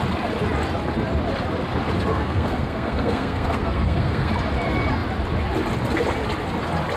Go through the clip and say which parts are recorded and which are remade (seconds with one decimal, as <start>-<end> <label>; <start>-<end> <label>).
0.0-2.1 recorded; 2.1-4.3 remade; 4.3-7.0 recorded